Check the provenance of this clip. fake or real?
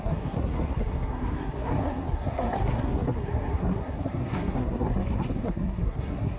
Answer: fake